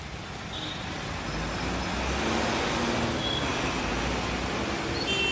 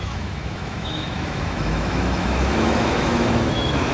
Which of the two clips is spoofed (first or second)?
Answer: second